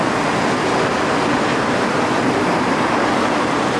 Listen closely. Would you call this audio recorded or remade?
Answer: recorded